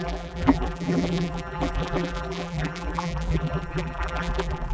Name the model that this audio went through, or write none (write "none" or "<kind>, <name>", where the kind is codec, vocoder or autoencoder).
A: vocoder, BigVGAN v2